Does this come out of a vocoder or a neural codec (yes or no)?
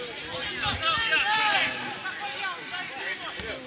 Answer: no